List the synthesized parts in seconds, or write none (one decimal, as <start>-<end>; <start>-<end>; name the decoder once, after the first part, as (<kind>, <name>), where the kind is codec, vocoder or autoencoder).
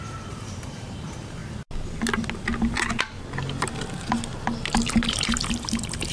0.0-1.4 (vocoder, BigVGAN v2); 5.1-6.1